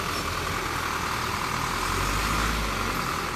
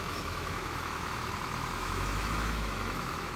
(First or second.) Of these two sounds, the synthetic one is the second